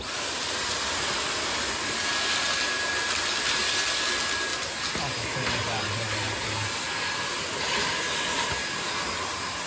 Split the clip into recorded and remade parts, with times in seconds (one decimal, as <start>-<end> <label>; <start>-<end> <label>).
0.0-9.7 recorded